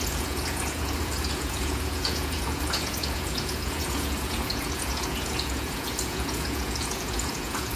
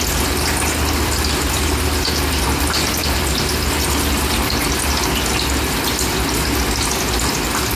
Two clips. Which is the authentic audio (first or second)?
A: second